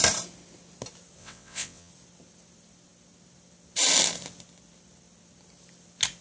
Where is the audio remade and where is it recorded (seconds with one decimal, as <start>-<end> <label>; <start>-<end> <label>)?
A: 0.0-1.2 recorded; 1.2-1.9 remade; 1.9-6.2 recorded